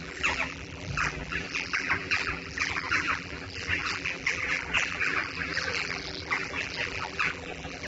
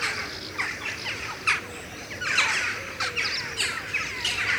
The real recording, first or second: second